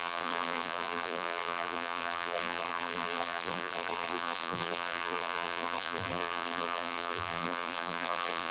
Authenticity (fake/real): fake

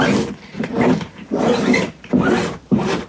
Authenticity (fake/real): fake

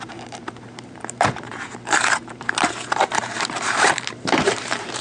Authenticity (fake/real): fake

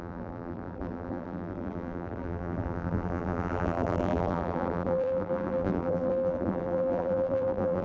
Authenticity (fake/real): fake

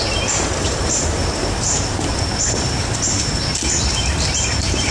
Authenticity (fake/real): fake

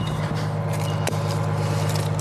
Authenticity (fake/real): real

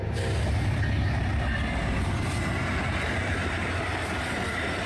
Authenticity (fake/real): fake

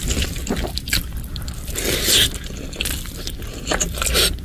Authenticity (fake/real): fake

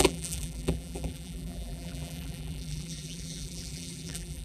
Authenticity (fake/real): fake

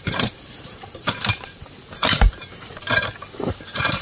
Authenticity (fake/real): fake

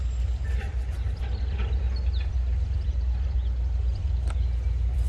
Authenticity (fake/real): fake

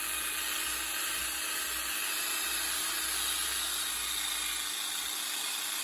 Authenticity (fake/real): real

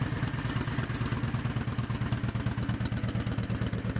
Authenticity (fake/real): real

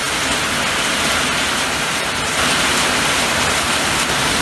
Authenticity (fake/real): real